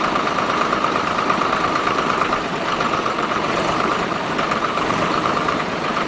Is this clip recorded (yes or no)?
no